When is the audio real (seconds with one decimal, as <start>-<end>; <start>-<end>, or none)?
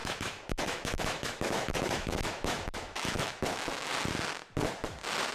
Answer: 3.9-5.3